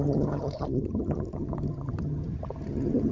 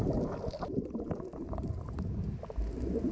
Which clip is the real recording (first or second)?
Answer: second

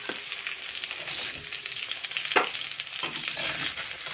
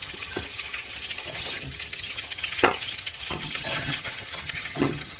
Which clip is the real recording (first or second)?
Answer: first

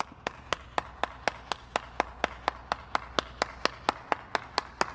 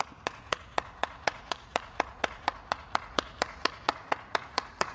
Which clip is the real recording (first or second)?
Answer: first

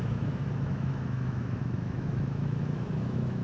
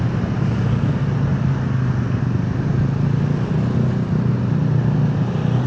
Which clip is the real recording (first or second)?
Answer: second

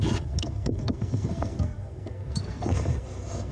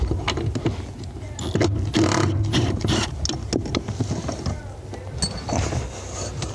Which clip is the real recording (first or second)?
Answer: second